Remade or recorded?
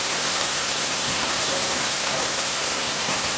remade